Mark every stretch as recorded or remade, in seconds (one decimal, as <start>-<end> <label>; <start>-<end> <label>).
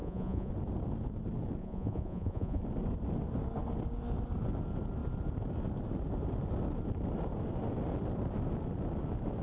0.0-0.5 remade; 0.5-1.6 recorded; 1.6-2.6 remade; 2.6-9.4 recorded